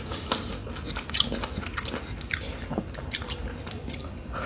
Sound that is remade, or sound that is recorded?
recorded